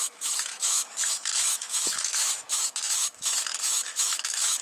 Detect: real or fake fake